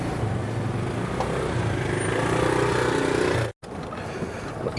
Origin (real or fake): real